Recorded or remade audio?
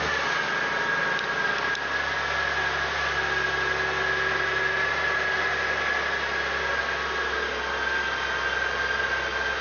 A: recorded